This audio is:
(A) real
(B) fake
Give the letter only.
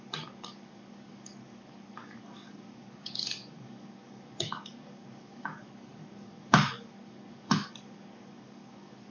B